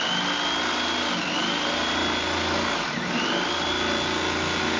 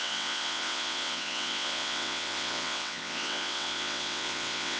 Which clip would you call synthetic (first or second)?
second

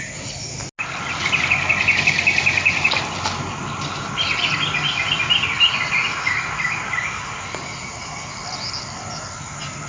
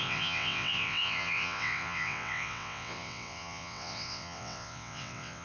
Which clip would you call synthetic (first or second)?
second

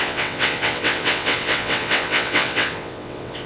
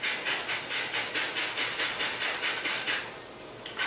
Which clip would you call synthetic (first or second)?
first